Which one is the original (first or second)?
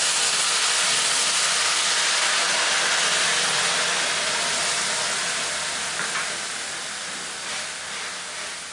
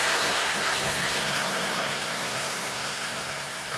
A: first